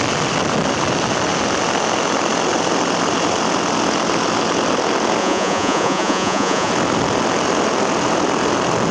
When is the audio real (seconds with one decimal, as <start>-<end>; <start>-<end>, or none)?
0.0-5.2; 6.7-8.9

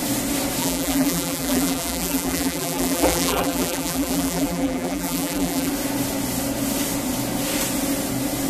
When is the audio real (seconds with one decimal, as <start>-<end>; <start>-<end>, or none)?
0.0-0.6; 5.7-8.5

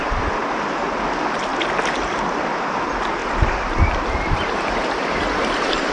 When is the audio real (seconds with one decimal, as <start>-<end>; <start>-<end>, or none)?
0.0-3.2